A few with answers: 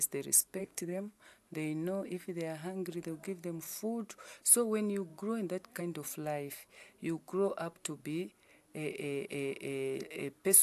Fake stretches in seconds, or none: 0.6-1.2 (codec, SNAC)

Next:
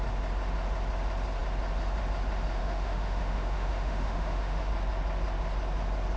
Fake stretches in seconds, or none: 2.6-4.7 (autoencoder, DAC-VAE)

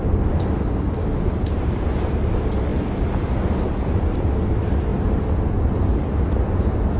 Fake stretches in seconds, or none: none

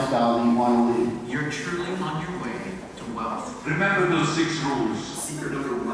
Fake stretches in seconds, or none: 2.5-3.4 (vocoder, Vocos)

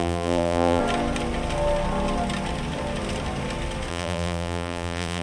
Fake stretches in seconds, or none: 0.0-0.8 (vocoder, BigVGAN v2); 3.9-5.2

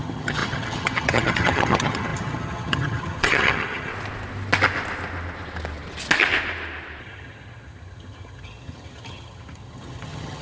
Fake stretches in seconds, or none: 0.0-3.9 (vocoder, HiFi-GAN); 7.0-10.4

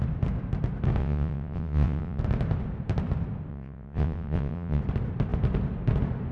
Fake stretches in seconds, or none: 1.0-2.2 (vocoder, WaveNeXt); 3.5-4.8